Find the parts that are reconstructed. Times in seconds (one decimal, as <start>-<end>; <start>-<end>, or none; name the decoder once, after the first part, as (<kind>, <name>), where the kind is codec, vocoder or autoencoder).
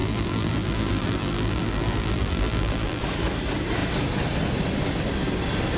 0.0-3.0 (vocoder, BigVGAN v2)